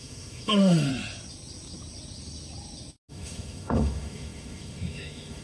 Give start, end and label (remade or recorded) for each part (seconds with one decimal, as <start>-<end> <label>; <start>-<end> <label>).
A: 0.0-0.9 remade; 0.9-3.1 recorded; 3.1-5.4 remade